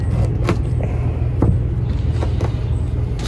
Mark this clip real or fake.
real